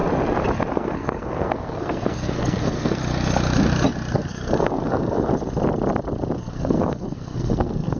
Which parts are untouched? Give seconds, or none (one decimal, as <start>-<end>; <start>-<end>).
0.0-0.7; 3.0-4.1; 5.3-6.4